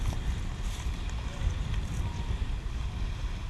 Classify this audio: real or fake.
real